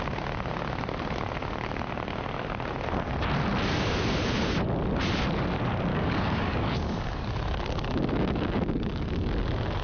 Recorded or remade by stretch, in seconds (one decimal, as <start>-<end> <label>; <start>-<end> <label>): 0.0-5.9 recorded; 5.9-9.3 remade; 9.3-9.8 recorded